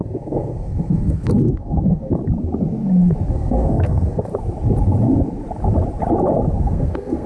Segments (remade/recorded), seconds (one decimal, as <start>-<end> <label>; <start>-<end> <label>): 0.0-2.2 remade; 2.2-3.3 recorded; 3.3-4.3 remade; 4.3-6.6 recorded; 6.6-7.3 remade